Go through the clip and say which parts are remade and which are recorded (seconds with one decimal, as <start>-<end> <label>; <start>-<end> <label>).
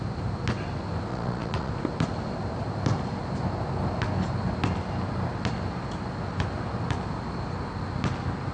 0.0-1.1 recorded; 1.1-1.7 remade; 1.7-8.5 recorded